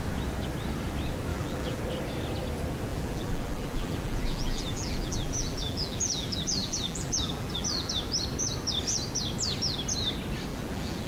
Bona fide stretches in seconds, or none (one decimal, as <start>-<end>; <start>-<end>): 0.0-1.3; 1.8-2.9; 7.9-10.5